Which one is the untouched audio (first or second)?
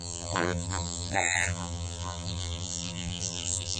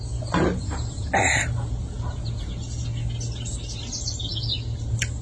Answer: second